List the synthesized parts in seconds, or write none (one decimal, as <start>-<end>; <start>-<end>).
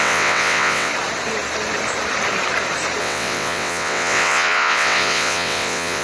0.0-0.9; 3.0-6.0